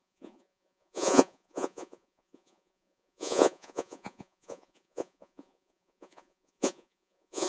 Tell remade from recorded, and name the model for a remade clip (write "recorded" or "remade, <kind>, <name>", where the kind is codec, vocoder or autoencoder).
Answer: remade, vocoder, Vocos